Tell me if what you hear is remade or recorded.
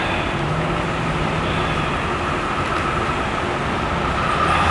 recorded